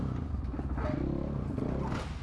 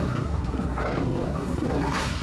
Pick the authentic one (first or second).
first